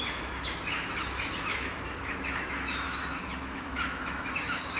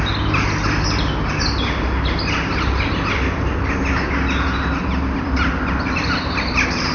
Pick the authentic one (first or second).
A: second